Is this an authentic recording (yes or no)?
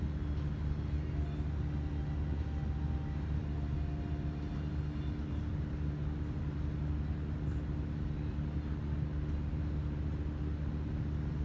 yes